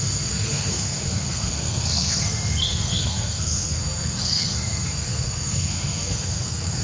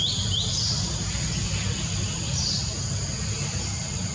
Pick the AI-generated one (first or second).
first